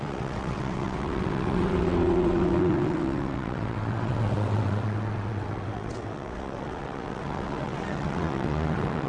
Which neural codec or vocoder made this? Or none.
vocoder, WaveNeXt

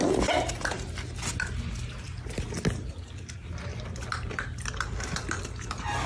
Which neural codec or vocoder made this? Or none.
none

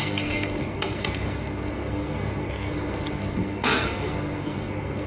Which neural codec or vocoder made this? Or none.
codec, SNAC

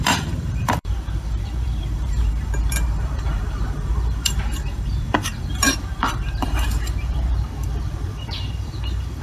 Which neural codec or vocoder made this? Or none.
vocoder, BigVGAN v2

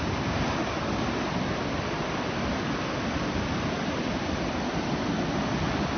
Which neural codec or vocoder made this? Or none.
none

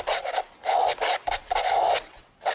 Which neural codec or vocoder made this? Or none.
none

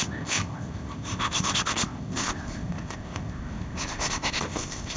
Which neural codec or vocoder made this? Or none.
codec, ZipCodec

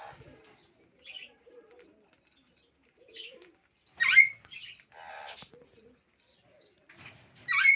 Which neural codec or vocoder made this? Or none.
none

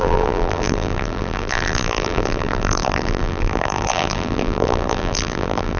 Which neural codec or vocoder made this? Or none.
vocoder, BigVGAN v2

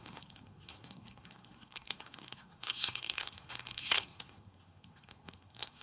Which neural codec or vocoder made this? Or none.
codec, SNAC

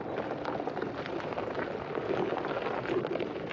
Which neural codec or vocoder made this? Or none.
none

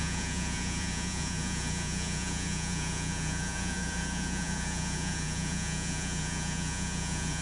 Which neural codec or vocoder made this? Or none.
vocoder, Vocos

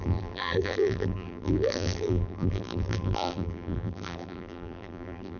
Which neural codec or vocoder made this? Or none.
vocoder, BigVGAN v2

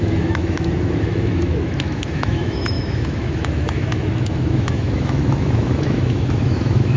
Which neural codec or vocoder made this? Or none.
autoencoder, DAC-VAE